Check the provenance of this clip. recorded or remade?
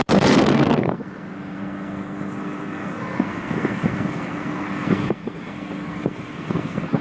remade